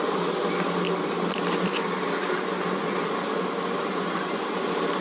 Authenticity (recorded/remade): recorded